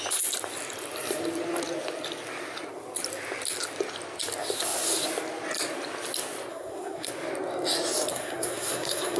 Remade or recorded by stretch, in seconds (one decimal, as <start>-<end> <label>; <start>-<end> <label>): 0.0-6.5 recorded; 6.5-7.1 remade; 7.1-8.1 recorded; 8.1-9.2 remade